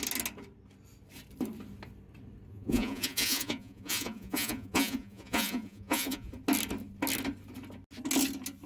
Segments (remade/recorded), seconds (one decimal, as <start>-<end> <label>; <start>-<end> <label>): 0.0-2.5 recorded; 2.5-6.3 remade; 6.3-8.7 recorded